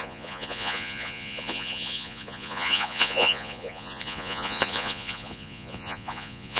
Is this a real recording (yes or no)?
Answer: no